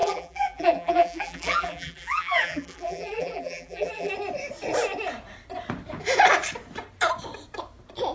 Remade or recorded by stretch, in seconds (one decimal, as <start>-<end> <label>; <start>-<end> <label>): 0.0-4.1 remade; 4.1-8.1 recorded